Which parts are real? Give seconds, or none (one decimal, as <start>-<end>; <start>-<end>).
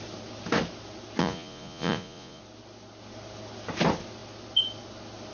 0.0-1.2; 2.4-5.3